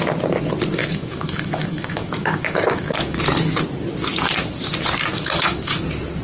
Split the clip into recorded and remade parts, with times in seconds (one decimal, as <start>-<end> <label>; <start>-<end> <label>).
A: 0.0-0.8 recorded; 0.8-3.2 remade; 3.2-5.1 recorded; 5.1-5.8 remade; 5.8-6.2 recorded